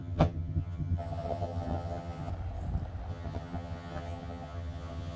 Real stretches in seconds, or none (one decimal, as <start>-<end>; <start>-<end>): 2.3-3.1